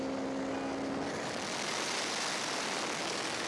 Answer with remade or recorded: recorded